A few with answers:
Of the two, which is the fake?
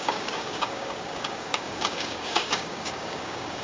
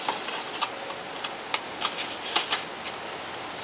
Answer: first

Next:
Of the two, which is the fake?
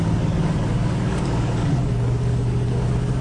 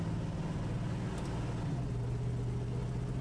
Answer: first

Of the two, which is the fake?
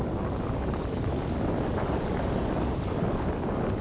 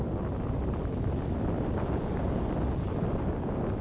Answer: first